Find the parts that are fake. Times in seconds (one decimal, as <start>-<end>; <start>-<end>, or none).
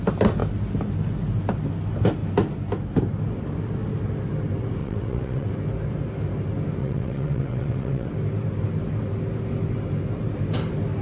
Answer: 4.8-5.5; 6.8-8.1